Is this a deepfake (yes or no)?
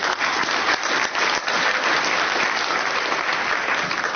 no